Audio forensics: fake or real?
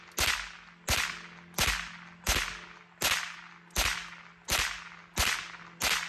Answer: real